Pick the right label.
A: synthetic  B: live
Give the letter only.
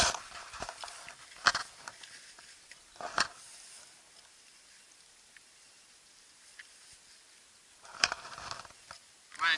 B